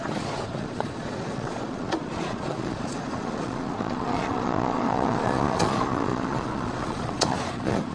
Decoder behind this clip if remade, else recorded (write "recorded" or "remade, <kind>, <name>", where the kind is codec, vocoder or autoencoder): remade, vocoder, Vocos